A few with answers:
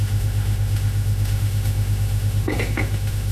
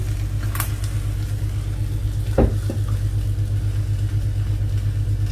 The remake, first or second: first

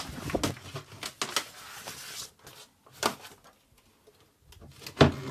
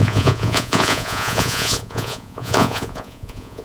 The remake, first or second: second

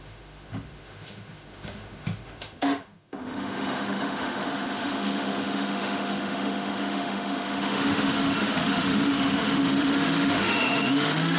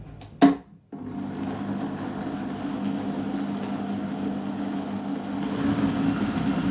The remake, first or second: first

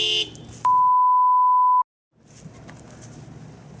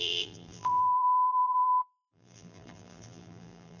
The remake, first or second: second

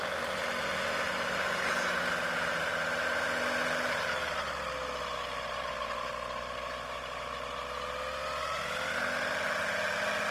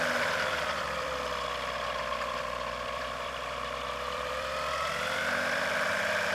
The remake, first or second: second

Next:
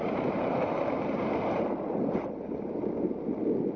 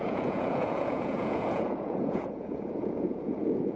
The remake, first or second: second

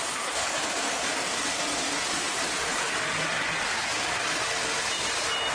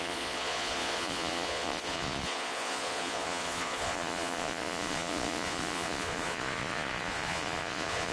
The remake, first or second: second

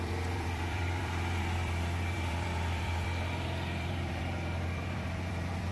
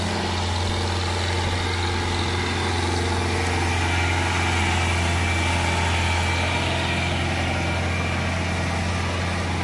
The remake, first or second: first